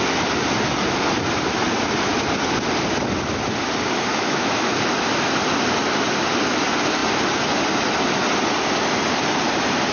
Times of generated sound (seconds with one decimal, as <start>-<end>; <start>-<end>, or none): 4.1-4.7

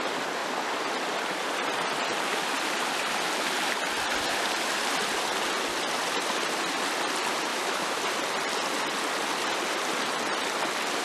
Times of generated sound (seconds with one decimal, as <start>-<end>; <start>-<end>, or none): 7.5-8.0

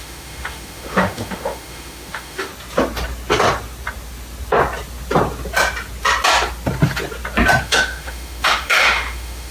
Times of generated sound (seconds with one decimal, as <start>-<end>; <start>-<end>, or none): 0.0-2.5; 7.6-9.5